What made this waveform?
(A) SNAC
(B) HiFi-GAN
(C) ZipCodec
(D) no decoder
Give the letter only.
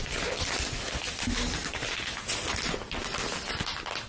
D